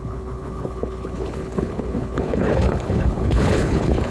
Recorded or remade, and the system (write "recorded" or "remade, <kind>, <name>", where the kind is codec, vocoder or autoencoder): remade, codec, HILCodec